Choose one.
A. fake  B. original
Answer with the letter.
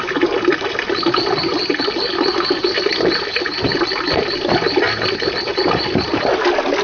B